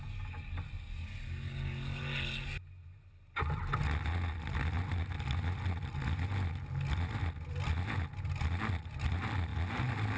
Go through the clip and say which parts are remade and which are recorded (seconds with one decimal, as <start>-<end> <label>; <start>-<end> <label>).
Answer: 0.0-10.2 recorded